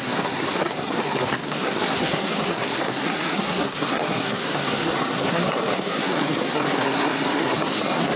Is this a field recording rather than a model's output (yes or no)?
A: no